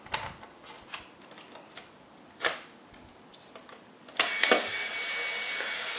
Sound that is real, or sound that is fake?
real